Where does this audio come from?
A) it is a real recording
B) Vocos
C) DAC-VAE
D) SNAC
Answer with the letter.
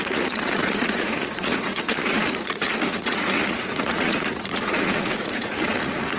B